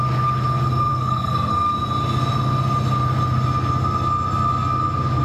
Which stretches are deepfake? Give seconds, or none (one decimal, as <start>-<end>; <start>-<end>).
0.9-1.5